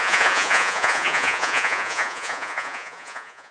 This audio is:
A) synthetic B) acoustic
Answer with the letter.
A